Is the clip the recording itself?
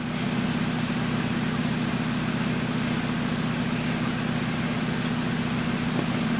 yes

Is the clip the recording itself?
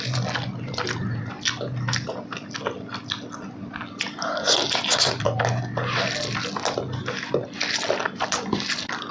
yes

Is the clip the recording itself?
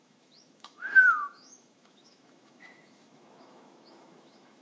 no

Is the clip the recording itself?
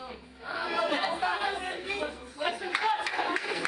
no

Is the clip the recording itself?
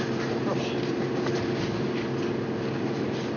yes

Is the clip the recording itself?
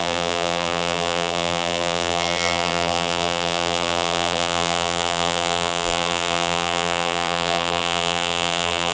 no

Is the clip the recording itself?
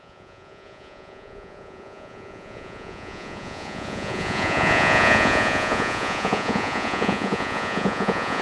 no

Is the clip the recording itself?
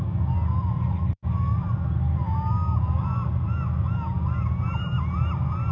yes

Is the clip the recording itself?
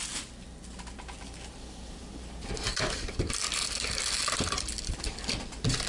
yes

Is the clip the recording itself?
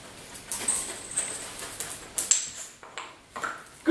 yes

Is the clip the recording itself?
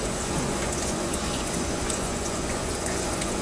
no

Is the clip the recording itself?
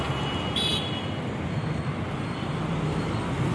yes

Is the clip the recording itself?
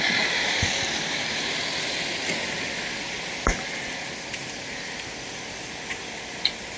yes